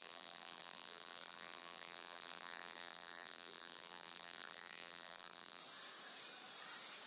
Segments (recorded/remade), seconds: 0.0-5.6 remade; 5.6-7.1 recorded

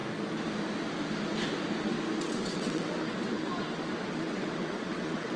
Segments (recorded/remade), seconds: 0.0-2.2 recorded; 2.2-5.4 remade